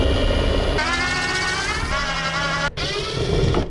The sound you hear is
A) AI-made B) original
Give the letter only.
B